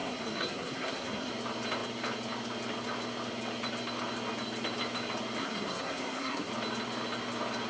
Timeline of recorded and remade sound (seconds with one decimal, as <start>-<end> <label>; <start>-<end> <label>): 0.0-1.3 remade; 1.3-5.4 recorded; 5.4-6.5 remade; 6.5-7.7 recorded